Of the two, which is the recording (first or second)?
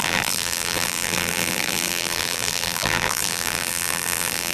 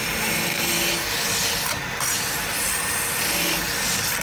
second